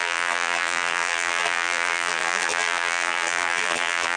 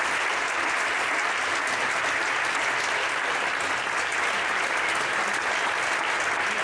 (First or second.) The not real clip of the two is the first